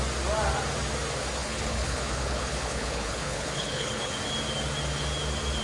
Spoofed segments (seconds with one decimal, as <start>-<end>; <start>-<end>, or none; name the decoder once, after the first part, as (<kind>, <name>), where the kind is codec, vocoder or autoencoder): 1.4-4.1 (codec, HILCodec)